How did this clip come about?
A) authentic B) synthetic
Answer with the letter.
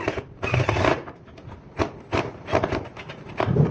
B